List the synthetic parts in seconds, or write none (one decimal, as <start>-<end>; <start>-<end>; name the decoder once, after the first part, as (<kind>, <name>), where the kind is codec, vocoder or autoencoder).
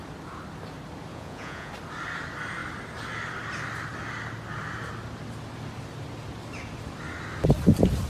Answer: 1.1-1.7 (vocoder, Vocos)